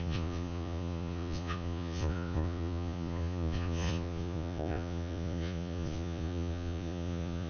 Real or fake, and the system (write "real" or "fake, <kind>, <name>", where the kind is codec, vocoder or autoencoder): fake, vocoder, Vocos